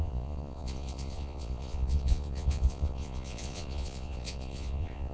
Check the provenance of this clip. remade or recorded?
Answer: remade